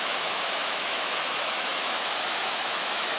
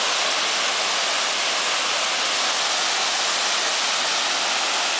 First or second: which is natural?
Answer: second